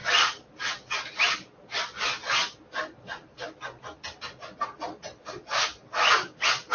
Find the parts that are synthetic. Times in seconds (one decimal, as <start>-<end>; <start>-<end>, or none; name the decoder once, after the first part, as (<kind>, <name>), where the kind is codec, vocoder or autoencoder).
none